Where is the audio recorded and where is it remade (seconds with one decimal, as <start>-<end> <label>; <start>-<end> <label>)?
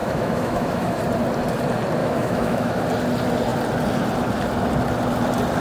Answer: 0.0-1.0 remade; 1.0-2.0 recorded; 2.0-2.8 remade; 2.8-5.6 recorded